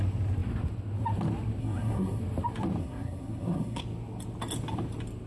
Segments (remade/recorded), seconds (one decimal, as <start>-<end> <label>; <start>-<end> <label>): 0.0-1.6 recorded; 1.6-2.2 remade; 2.2-2.8 recorded; 2.8-3.8 remade; 3.8-5.3 recorded